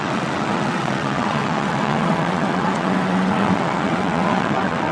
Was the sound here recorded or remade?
remade